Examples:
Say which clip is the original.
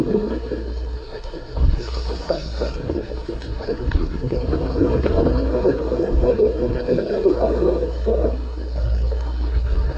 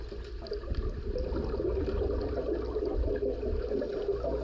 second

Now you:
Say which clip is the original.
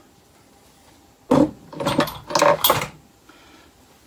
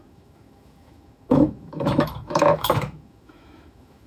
first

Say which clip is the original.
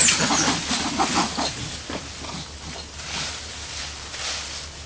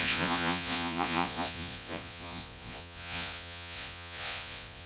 first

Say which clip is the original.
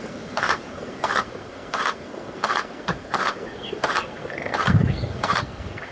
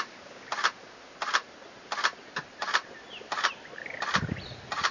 second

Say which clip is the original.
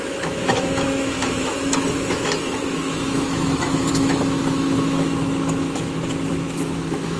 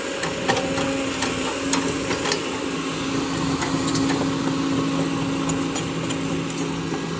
second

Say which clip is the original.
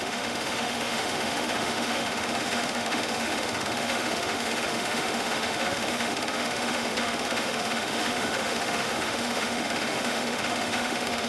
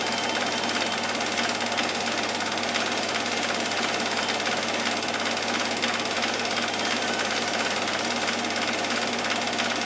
second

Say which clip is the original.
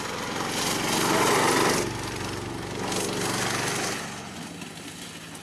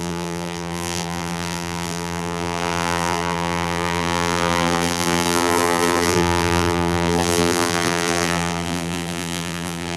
first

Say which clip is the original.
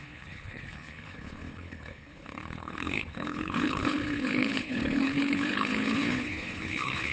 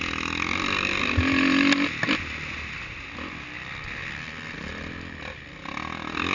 second